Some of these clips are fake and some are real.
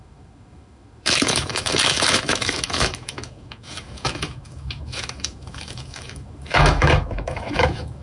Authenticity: fake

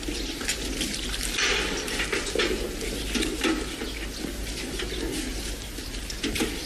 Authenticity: real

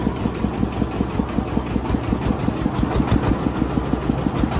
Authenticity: real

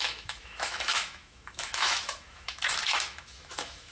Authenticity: fake